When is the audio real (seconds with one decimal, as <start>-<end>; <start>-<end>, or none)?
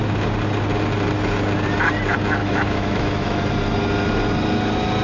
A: 0.0-2.4; 3.4-5.0